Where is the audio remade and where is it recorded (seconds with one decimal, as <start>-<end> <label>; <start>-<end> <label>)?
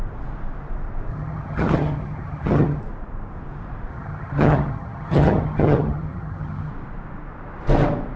0.0-1.1 recorded; 1.1-2.8 remade; 2.8-3.9 recorded; 3.9-6.7 remade; 6.7-8.2 recorded